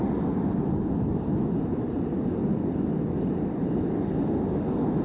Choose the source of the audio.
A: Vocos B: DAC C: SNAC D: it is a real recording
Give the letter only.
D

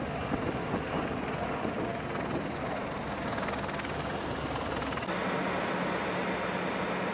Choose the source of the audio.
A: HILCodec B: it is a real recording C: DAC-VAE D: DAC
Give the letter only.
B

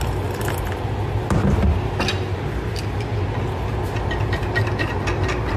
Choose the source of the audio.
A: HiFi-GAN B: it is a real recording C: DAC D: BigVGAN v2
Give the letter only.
B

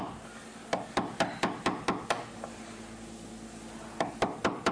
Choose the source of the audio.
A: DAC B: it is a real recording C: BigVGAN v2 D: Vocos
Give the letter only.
B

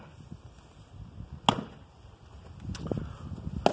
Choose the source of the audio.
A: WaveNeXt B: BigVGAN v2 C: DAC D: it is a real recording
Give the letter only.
D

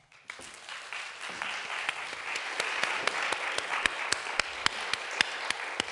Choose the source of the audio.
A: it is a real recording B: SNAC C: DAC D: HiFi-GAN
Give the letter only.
A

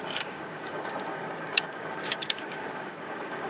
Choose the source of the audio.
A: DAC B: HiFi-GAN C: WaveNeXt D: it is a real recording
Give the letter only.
A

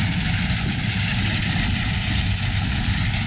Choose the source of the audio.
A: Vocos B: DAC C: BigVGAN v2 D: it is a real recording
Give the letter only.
D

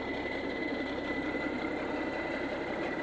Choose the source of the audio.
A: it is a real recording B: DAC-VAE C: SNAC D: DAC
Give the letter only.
A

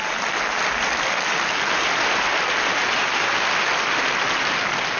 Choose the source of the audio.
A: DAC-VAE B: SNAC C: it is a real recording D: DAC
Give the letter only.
C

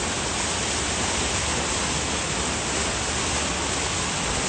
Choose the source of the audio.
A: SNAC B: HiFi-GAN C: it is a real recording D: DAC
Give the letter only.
C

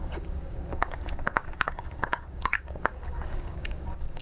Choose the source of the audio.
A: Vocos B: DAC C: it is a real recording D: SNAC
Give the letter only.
B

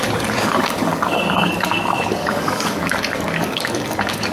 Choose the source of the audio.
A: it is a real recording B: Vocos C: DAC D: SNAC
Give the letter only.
C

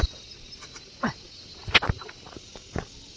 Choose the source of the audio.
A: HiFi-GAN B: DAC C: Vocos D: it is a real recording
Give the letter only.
D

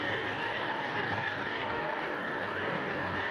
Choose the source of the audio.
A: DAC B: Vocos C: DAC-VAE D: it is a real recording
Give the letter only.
A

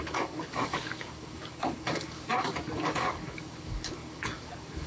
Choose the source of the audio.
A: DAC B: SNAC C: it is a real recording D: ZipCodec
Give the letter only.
A